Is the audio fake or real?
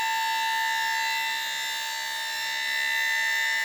real